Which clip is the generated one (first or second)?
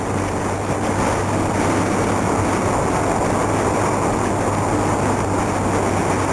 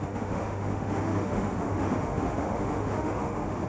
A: second